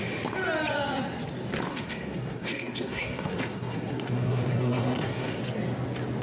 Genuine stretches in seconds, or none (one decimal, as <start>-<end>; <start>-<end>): 0.0-1.7; 5.4-6.2